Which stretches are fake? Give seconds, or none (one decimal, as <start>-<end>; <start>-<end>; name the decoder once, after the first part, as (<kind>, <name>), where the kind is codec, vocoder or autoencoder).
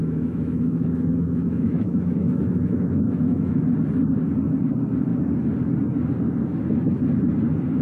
0.0-3.6 (autoencoder, DAC-VAE)